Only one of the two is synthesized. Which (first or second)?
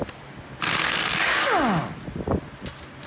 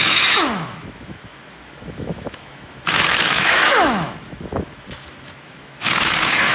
second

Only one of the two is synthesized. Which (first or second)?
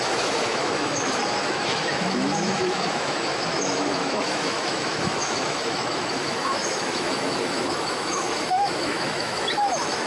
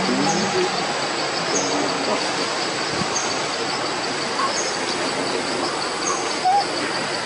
first